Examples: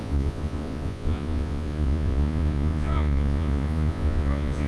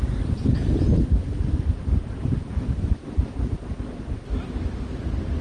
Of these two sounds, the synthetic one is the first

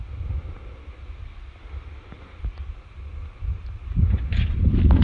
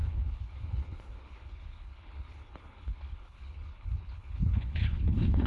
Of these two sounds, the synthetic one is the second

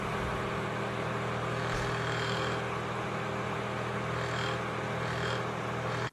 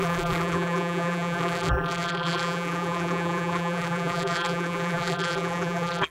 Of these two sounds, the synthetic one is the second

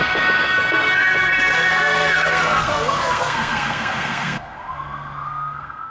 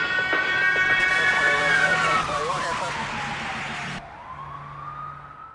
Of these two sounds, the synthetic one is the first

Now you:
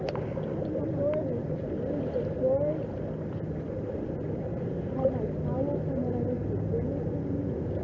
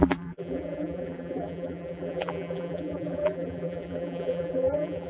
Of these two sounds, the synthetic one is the second